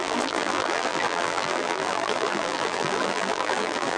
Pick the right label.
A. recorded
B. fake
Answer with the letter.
B